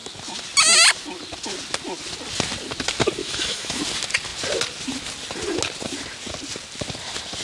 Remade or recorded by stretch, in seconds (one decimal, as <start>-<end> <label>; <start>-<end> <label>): 0.0-3.2 recorded; 3.2-3.8 remade; 3.8-7.4 recorded